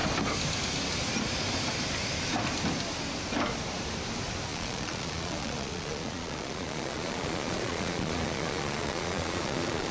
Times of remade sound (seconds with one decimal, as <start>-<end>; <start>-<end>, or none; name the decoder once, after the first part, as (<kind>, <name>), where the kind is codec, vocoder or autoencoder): 4.5-9.9 (vocoder, Vocos)